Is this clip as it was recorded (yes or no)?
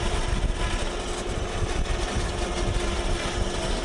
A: yes